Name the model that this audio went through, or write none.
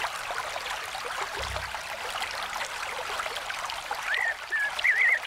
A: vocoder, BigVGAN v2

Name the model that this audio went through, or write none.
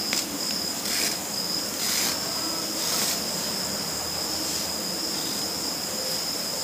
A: none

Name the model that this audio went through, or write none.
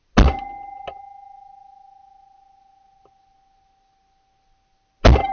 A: none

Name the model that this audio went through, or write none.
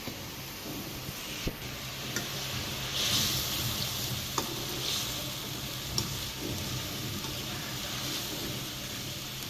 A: vocoder, BigVGAN v2